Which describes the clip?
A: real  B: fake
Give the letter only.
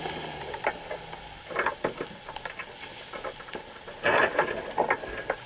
A